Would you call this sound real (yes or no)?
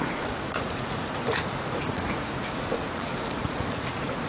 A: no